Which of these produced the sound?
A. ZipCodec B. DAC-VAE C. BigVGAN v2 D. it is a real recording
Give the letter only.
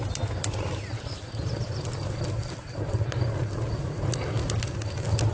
D